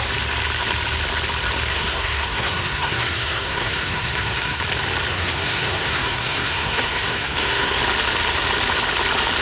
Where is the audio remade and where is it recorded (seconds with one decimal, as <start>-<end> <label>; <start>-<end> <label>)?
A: 0.0-1.7 recorded; 1.7-4.6 remade; 4.6-5.1 recorded; 5.1-7.8 remade; 7.8-9.4 recorded